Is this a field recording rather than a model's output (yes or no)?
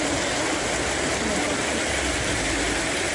yes